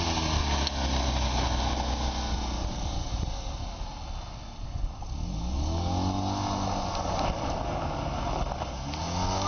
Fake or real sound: real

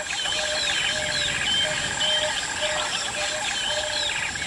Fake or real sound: real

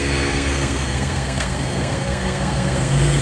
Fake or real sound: fake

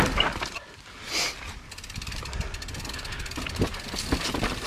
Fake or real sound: real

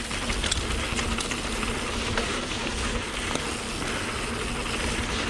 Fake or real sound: real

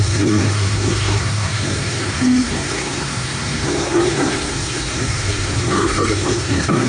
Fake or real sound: fake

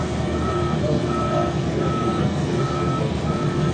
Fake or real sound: fake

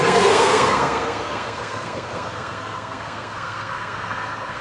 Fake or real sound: fake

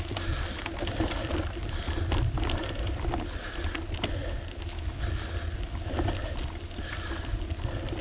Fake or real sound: real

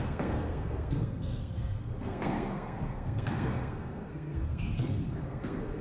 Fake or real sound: fake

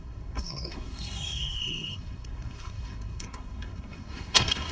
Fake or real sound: fake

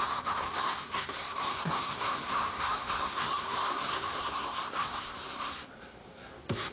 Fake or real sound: fake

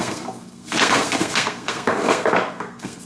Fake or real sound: fake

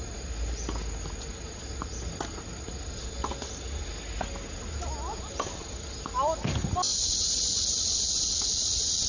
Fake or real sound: real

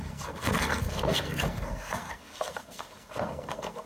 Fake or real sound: fake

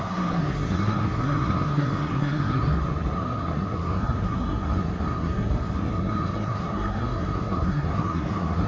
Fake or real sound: fake